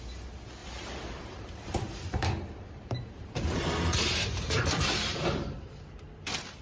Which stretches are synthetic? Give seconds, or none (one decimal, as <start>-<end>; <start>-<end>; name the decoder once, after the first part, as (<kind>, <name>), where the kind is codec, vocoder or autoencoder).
0.6-4.6 (vocoder, BigVGAN v2); 5.1-5.8